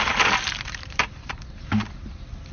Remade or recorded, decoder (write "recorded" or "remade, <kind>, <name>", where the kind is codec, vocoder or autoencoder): remade, vocoder, BigVGAN v2